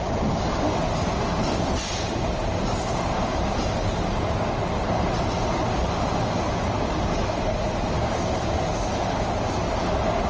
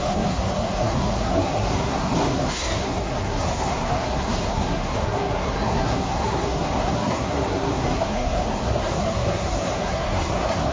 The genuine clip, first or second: first